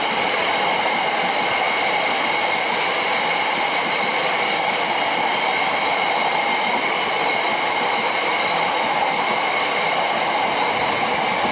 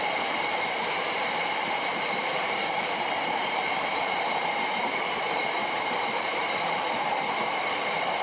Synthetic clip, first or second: second